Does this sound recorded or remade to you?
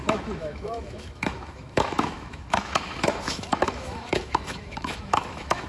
remade